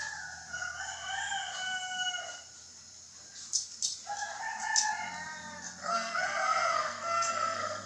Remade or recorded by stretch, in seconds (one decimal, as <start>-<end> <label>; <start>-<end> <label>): 0.0-5.8 recorded; 5.8-7.9 remade